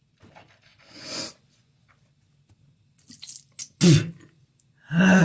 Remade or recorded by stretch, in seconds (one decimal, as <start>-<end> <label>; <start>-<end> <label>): 0.0-0.7 recorded; 0.7-1.9 remade; 1.9-5.2 recorded